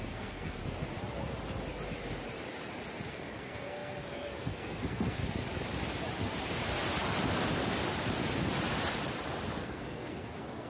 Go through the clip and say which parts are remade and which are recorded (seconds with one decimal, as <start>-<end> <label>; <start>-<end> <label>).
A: 0.0-0.6 remade; 0.6-3.1 recorded; 3.1-5.2 remade; 5.2-9.6 recorded; 9.6-10.7 remade